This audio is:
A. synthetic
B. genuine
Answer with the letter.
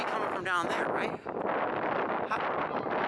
B